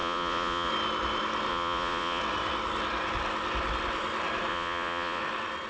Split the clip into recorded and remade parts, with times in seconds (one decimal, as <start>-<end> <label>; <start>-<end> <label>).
0.0-0.7 remade; 0.7-1.5 recorded; 1.5-2.2 remade; 2.2-4.5 recorded; 4.5-5.2 remade; 5.2-5.7 recorded

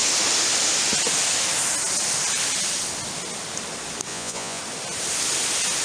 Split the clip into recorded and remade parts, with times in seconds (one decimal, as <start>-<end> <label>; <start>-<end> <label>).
0.0-4.1 recorded; 4.1-4.6 remade; 4.6-5.8 recorded

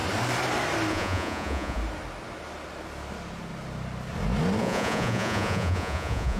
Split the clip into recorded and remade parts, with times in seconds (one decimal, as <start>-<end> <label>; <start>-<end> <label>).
0.0-0.9 recorded; 0.9-1.8 remade; 1.8-4.6 recorded; 4.6-6.4 remade

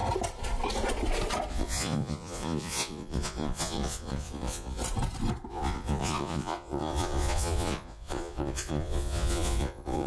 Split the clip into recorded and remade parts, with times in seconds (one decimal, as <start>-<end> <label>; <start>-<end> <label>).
0.0-1.5 recorded; 1.5-4.8 remade; 4.8-5.5 recorded; 5.5-10.1 remade

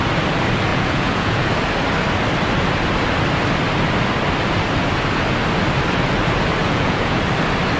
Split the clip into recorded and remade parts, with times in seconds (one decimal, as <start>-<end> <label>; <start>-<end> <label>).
0.0-0.7 recorded; 0.7-1.5 remade; 1.5-6.6 recorded; 6.6-7.2 remade; 7.2-7.8 recorded

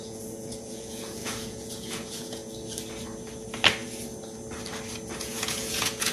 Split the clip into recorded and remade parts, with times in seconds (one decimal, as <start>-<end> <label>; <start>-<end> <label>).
0.0-2.4 remade; 2.4-5.2 recorded; 5.2-6.1 remade

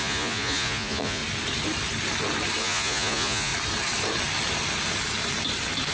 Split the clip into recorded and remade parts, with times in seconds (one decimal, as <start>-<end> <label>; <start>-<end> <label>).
0.0-1.2 remade; 1.2-2.6 recorded; 2.6-3.5 remade; 3.5-5.9 recorded